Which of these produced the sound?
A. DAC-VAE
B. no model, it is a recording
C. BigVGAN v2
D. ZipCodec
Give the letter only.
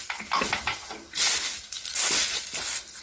B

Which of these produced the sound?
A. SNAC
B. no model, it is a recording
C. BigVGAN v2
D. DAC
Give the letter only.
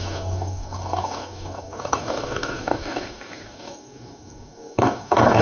D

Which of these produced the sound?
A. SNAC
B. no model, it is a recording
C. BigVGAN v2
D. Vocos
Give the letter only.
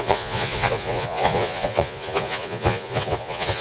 D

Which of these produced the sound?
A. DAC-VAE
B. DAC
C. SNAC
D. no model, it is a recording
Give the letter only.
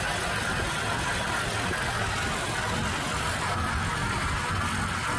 D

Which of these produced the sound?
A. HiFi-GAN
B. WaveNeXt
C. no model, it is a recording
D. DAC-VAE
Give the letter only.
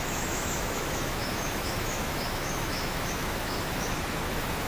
D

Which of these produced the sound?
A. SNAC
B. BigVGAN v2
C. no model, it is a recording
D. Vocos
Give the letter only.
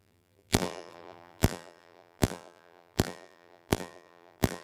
B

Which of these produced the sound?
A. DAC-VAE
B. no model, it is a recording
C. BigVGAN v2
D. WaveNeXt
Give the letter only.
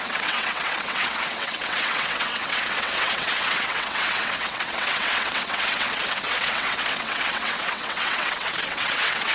D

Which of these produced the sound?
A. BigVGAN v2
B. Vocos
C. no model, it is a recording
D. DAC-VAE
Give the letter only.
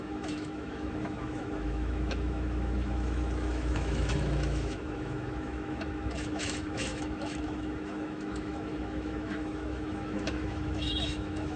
D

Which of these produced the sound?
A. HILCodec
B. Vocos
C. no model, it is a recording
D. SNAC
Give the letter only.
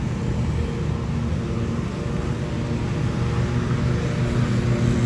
C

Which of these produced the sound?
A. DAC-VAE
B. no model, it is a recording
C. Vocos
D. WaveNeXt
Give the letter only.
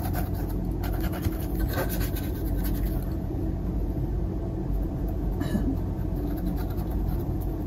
B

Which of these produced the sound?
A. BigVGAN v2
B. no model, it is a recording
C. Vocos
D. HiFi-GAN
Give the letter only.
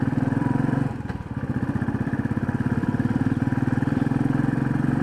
A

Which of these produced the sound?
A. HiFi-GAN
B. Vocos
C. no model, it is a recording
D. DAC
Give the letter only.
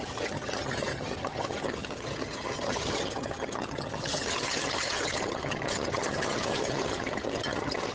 A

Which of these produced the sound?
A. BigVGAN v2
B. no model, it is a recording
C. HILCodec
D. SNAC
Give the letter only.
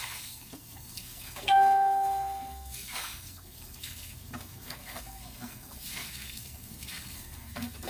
D